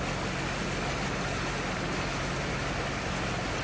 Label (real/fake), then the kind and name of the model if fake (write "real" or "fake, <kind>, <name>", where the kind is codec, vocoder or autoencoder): real